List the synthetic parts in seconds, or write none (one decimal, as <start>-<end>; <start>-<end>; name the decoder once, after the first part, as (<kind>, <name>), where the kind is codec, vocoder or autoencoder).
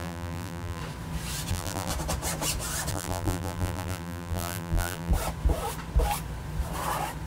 0.0-0.8 (vocoder, BigVGAN v2); 1.5-1.9; 2.9-5.1